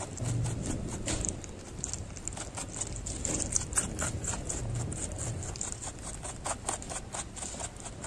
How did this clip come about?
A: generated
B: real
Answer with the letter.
A